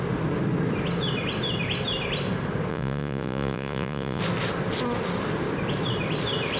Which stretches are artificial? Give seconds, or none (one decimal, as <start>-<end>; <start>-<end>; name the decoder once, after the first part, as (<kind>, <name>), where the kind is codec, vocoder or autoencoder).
2.7-4.2 (vocoder, Vocos)